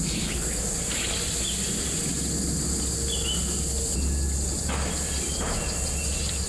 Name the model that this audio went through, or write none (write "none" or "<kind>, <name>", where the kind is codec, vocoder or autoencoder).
none